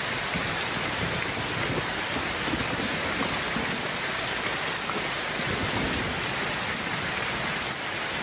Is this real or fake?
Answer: real